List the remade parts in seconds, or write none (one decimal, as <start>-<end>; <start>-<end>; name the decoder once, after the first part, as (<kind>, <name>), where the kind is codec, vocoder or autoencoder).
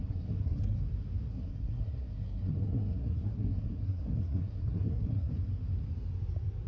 0.0-0.8 (codec, SNAC); 1.3-5.3